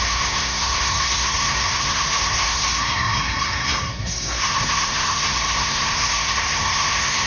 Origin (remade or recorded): remade